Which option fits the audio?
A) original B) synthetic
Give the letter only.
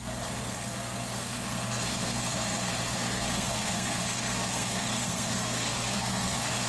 B